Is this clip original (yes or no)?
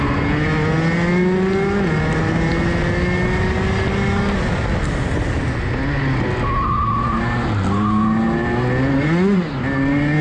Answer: yes